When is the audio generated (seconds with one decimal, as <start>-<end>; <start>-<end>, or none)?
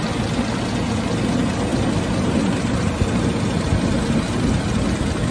none